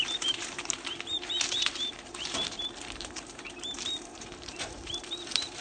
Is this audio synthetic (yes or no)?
yes